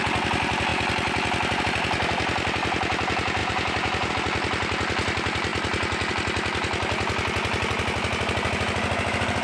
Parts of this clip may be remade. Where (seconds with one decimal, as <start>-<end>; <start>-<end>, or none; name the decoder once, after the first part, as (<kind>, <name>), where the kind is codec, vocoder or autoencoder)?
3.4-4.1 (vocoder, BigVGAN v2)